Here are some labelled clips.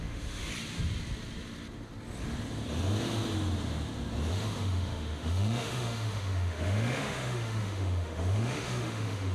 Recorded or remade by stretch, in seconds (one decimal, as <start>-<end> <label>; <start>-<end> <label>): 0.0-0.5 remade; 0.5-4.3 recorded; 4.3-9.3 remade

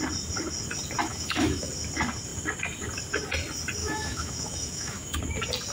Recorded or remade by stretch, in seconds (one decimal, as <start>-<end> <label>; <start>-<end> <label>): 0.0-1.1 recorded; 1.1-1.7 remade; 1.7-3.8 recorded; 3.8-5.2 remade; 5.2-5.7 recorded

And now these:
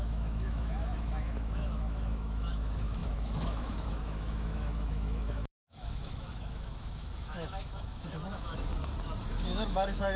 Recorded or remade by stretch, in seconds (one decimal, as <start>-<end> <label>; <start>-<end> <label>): 0.0-8.7 remade; 8.7-9.3 recorded; 9.3-10.2 remade

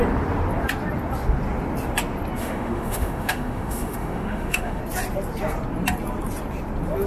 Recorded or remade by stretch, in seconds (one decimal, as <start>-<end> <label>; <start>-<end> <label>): 0.0-2.4 recorded; 2.4-4.8 remade; 4.8-7.1 recorded